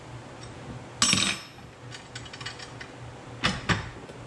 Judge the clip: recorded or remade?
recorded